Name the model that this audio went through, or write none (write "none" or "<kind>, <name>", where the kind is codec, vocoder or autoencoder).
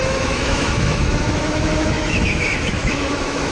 autoencoder, DAC-VAE